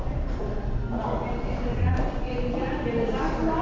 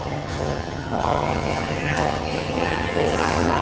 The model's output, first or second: second